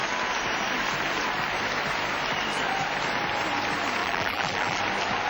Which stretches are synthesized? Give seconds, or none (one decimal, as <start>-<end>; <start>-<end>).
4.0-4.8

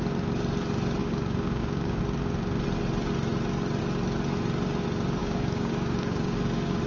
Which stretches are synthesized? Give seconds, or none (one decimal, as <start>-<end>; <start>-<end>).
1.0-2.0; 5.2-6.9

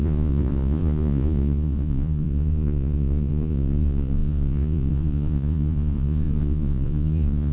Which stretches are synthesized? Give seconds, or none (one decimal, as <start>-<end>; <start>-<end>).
0.0-7.5

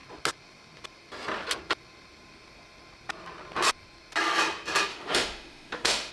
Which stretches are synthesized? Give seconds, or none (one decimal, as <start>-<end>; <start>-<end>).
4.9-6.1